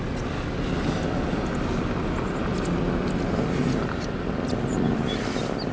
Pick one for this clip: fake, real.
real